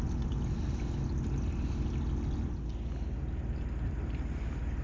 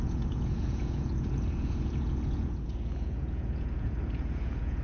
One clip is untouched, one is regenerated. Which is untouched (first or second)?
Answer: first